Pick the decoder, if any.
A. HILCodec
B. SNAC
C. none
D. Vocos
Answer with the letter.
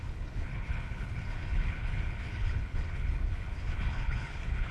A